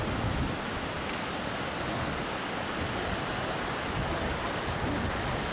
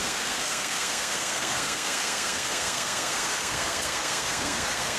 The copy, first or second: second